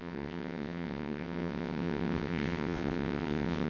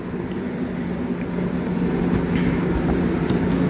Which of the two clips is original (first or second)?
second